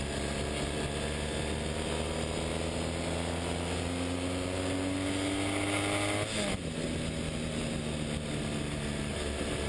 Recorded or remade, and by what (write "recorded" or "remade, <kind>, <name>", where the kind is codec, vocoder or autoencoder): recorded